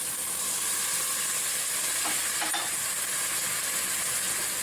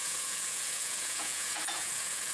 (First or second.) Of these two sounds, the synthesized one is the second